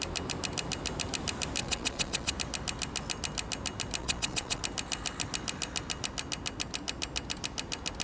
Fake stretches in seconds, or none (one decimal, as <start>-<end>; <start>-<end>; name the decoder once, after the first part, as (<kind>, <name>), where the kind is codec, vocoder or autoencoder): 1.6-2.3 (vocoder, Vocos); 4.0-4.6

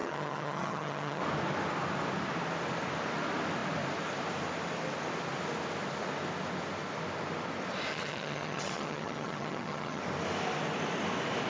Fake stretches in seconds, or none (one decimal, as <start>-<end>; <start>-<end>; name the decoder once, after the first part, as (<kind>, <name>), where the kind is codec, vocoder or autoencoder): 0.0-1.2 (vocoder, HiFi-GAN); 7.9-10.0

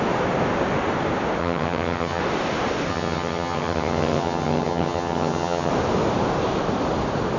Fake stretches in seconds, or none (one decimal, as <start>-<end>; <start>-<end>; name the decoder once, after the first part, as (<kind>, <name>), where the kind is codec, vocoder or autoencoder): 1.4-2.2 (vocoder, HiFi-GAN); 2.9-5.7

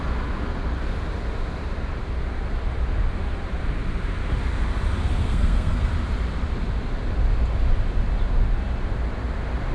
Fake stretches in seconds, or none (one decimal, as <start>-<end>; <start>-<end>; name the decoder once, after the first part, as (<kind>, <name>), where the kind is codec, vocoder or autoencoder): 5.2-5.9 (codec, SNAC)

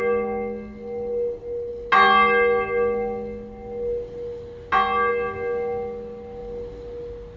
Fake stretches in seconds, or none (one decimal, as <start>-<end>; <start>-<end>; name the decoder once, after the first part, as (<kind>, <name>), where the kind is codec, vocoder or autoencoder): none

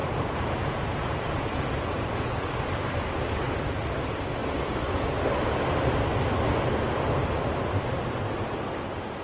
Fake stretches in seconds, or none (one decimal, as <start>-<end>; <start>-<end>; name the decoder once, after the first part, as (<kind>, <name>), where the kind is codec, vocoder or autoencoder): 0.0-2.5 (vocoder, Vocos); 4.4-5.1

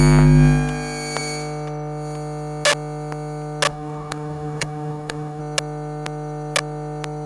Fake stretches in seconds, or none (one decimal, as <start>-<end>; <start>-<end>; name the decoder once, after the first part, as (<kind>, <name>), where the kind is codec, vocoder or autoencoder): 3.7-5.4 (codec, DAC)